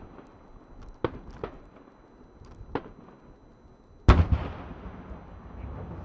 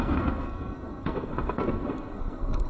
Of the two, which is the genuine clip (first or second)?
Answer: first